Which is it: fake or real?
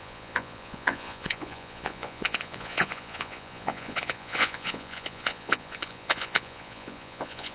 fake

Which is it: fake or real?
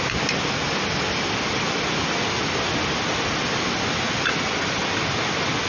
real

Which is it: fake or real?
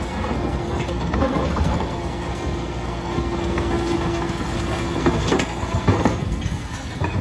fake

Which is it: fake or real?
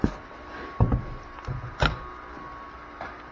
real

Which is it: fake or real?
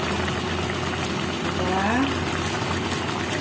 real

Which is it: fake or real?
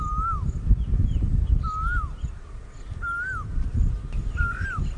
real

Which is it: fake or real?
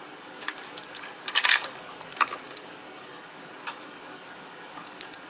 fake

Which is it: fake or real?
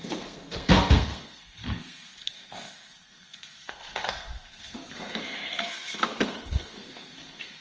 fake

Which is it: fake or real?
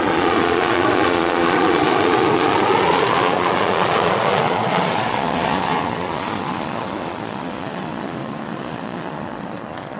fake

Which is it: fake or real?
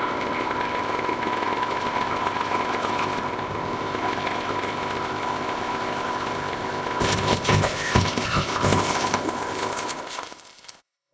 fake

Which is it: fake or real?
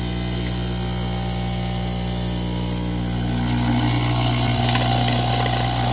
real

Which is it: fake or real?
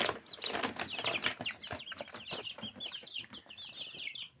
real